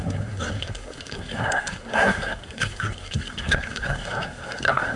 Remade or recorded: remade